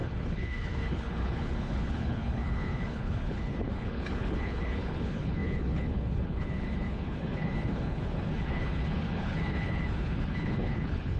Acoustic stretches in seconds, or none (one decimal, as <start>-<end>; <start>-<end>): none